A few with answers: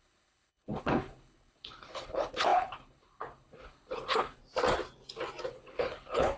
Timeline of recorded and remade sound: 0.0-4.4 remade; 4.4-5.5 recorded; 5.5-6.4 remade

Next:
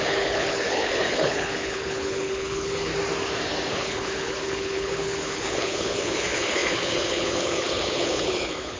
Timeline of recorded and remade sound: 0.0-2.9 remade; 2.9-3.7 recorded; 3.7-8.8 remade

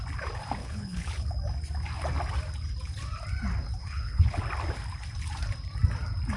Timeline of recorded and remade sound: 0.0-0.6 recorded; 0.6-1.3 remade; 1.3-3.8 recorded; 3.8-4.4 remade; 4.4-6.4 recorded

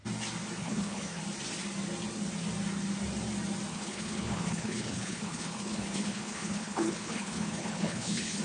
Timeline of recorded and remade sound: 0.0-0.6 recorded; 0.6-1.2 remade; 1.2-3.7 recorded; 3.7-8.4 remade

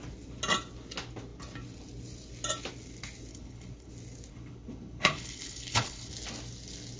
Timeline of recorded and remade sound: 0.0-3.3 recorded; 3.3-3.9 remade; 3.9-4.3 recorded; 4.3-6.1 remade; 6.1-7.0 recorded

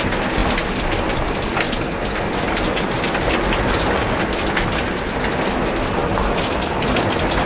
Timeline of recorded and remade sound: 0.0-7.5 recorded